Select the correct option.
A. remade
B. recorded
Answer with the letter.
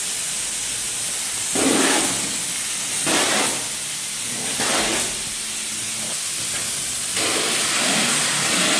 B